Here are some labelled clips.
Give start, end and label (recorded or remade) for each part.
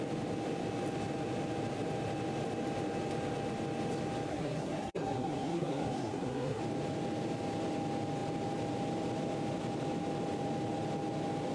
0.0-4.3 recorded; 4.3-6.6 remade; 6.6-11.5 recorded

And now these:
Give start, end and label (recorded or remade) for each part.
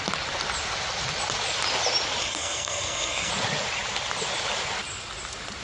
0.0-2.2 recorded; 2.2-3.3 remade; 3.3-5.6 recorded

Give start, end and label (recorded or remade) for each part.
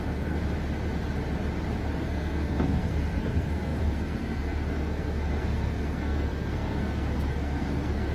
0.0-0.4 remade; 0.4-2.0 recorded; 2.0-8.1 remade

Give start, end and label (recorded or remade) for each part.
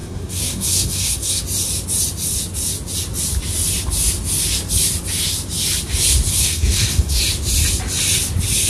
0.0-1.4 remade; 1.4-6.3 recorded; 6.3-7.2 remade; 7.2-8.7 recorded